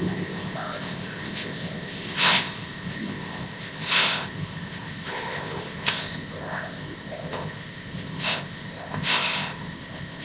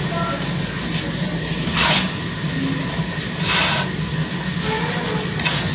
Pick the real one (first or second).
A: second